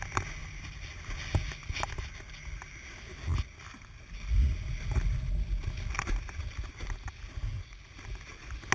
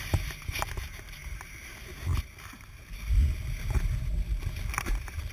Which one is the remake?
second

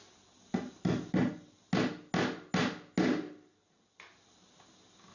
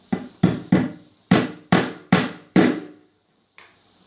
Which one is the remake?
second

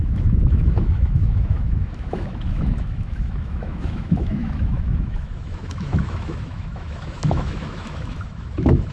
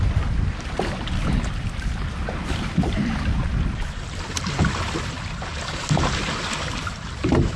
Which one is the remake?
first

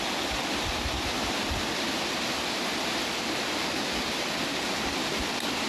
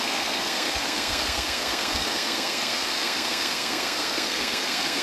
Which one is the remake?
second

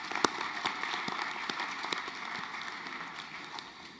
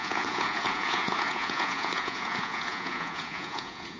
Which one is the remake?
second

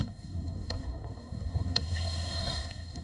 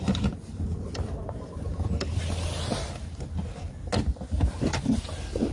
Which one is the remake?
first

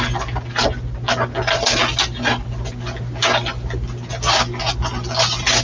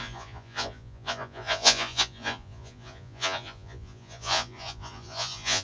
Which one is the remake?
second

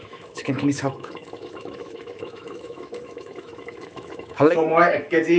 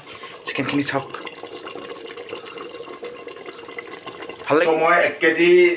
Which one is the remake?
first